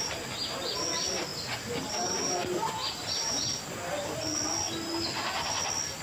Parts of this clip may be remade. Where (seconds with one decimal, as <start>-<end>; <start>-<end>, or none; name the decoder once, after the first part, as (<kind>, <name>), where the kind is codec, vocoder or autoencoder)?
none